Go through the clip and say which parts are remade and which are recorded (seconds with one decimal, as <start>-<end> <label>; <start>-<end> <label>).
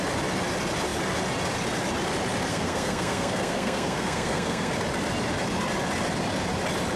0.0-2.5 recorded; 2.5-4.7 remade; 4.7-7.0 recorded